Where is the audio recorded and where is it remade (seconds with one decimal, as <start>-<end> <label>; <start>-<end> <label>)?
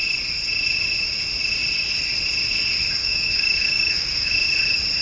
0.0-3.0 recorded; 3.0-4.3 remade; 4.3-5.0 recorded